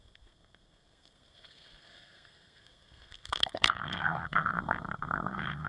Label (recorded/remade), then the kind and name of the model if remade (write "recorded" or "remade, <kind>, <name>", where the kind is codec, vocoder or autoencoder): remade, codec, SNAC